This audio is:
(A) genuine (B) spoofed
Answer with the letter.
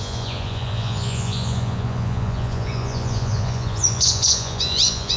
B